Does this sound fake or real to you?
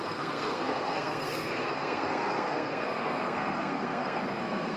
fake